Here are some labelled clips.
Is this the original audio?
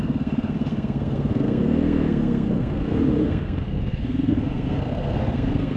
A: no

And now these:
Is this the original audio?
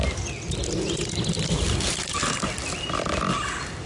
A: yes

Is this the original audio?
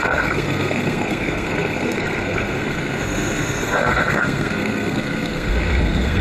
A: no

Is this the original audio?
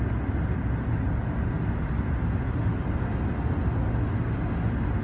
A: yes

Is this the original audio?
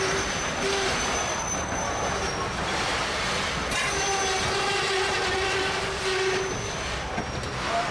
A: yes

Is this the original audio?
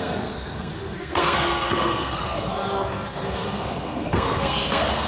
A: no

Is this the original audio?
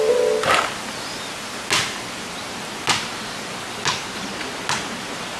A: yes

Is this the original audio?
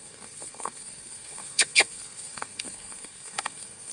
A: no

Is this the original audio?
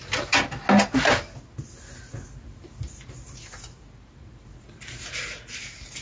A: yes